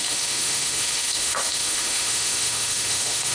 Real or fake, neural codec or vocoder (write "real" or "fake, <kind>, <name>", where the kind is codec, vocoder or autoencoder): fake, autoencoder, DAC-VAE